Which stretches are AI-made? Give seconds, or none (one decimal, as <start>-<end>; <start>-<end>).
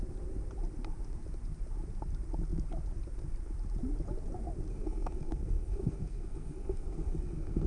4.7-7.7